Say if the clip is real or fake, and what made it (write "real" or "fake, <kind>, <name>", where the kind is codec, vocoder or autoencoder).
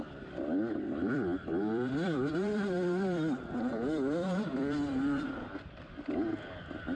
fake, vocoder, BigVGAN v2